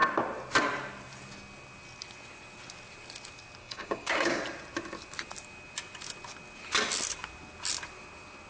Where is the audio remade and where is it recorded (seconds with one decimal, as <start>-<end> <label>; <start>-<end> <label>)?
0.0-3.6 recorded; 3.6-4.4 remade; 4.4-8.5 recorded